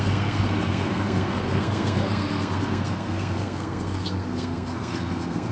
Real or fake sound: fake